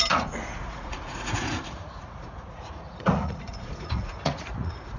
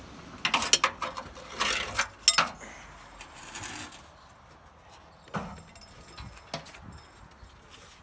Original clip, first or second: second